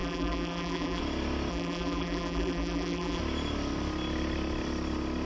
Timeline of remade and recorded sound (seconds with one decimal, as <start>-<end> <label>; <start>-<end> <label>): 0.0-1.0 remade; 1.0-1.5 recorded; 1.5-3.2 remade; 3.2-5.2 recorded